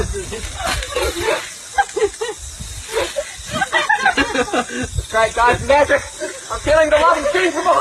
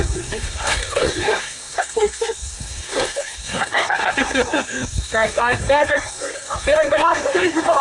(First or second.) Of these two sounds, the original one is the first